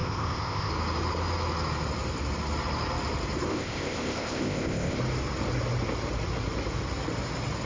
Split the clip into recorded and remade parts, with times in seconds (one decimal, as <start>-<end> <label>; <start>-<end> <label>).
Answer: 0.0-0.7 remade; 0.7-3.5 recorded; 3.5-5.0 remade; 5.0-7.7 recorded